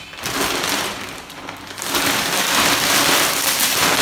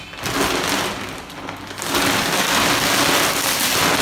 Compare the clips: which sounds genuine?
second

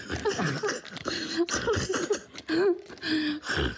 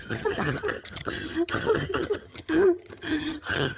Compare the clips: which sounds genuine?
first